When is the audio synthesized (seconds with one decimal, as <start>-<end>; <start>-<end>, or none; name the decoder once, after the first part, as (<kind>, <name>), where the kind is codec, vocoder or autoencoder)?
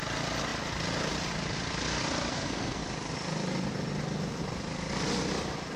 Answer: 2.3-2.8 (codec, SNAC)